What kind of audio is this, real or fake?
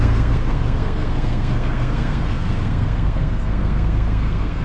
fake